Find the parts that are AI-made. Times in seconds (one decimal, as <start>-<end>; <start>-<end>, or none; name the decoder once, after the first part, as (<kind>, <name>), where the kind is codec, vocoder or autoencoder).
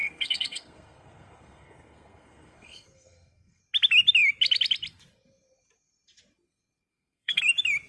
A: 0.0-3.6 (codec, SNAC); 6.9-7.4